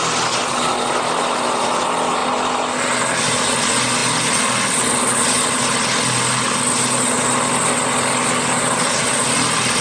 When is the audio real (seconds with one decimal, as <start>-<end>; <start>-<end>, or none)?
0.0-9.8